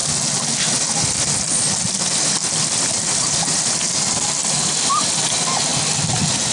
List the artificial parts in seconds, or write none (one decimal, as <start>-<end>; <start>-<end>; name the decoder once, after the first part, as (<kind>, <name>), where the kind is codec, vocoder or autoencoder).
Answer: 0.6-5.7 (vocoder, BigVGAN v2)